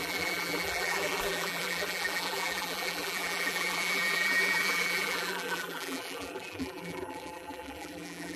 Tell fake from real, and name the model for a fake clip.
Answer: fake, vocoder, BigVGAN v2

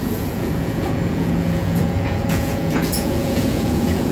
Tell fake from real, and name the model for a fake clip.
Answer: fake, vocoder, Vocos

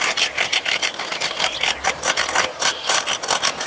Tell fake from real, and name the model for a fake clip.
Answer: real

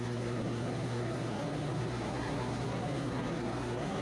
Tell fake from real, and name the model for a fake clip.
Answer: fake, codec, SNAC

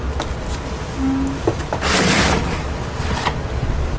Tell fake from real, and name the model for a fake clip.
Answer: real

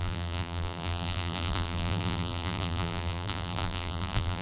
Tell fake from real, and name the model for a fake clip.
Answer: fake, vocoder, BigVGAN v2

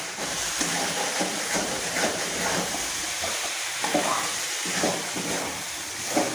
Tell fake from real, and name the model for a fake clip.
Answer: fake, vocoder, BigVGAN v2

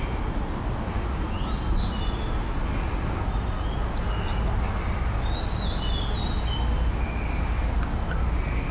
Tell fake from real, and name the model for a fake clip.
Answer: real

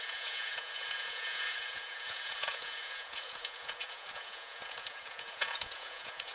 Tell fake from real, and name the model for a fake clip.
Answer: fake, vocoder, Vocos